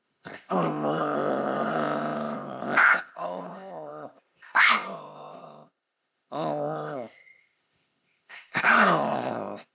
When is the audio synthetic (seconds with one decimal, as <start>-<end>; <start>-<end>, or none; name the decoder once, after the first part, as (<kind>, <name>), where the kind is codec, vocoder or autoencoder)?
0.0-9.7 (codec, ZipCodec)